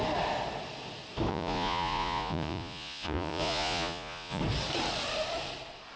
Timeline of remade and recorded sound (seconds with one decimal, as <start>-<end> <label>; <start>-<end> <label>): 0.0-1.3 recorded; 1.3-4.4 remade; 4.4-6.0 recorded